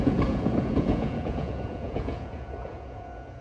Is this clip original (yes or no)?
no